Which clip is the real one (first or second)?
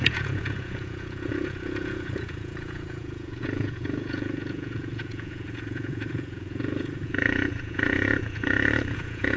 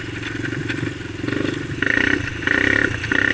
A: second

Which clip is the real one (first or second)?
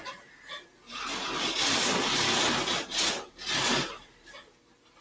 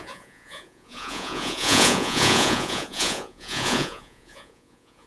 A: first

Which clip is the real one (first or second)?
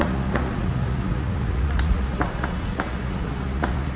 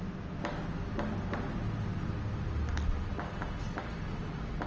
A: second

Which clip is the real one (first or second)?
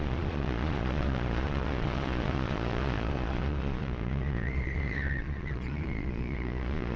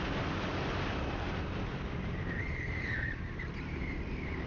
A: second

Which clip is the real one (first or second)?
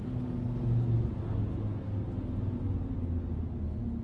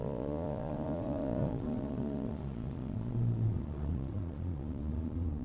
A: first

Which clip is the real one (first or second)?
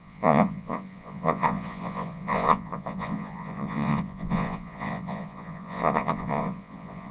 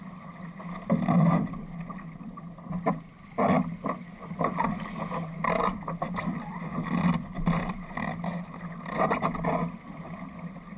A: second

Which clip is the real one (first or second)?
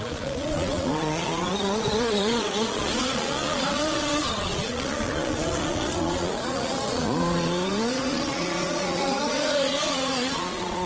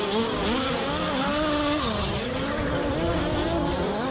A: second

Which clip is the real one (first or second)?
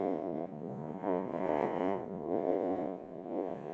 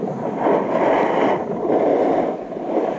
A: second